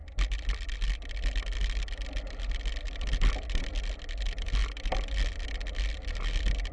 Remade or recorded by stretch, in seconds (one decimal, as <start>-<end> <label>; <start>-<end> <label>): 0.0-6.7 recorded